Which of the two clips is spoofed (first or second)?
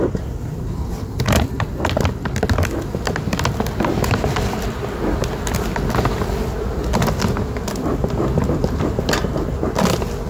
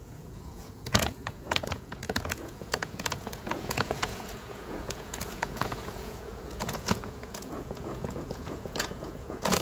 second